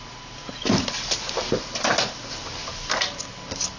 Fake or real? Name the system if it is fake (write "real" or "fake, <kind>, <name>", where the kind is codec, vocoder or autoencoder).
real